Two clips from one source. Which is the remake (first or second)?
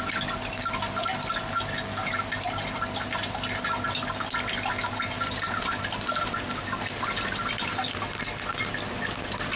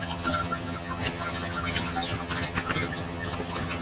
second